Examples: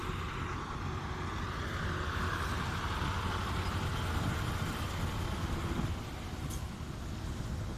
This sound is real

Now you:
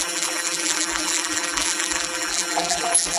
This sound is fake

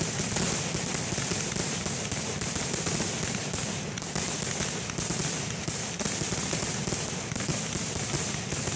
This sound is real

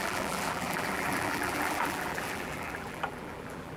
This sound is fake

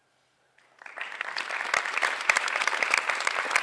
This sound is fake